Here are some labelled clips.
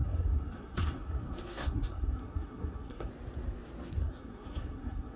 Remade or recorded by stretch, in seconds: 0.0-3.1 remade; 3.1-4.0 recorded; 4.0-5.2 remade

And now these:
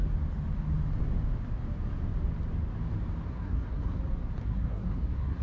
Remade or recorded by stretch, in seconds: 0.0-3.3 recorded; 3.3-4.0 remade; 4.0-4.4 recorded; 4.4-5.4 remade

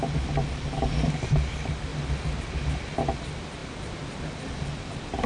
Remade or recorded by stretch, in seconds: 0.0-1.9 remade; 1.9-3.0 recorded; 3.0-5.3 remade